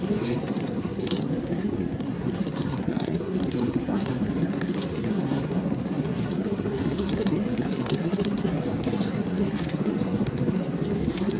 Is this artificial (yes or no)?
yes